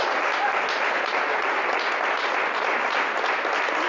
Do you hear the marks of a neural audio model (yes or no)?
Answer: no